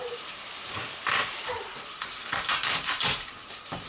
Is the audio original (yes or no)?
no